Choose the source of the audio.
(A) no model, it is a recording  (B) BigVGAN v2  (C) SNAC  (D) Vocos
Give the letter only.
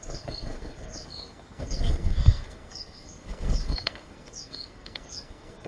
C